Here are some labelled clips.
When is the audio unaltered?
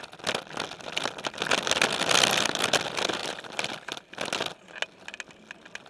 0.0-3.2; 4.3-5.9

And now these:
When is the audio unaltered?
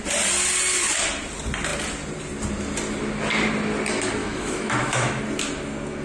0.0-4.2; 5.2-6.0